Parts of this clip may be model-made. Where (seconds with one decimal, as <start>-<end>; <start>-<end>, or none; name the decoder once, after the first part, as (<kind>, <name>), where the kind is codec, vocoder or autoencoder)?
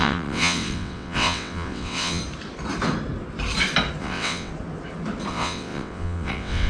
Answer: 0.0-2.2 (vocoder, WaveNeXt); 4.0-4.5; 5.3-6.7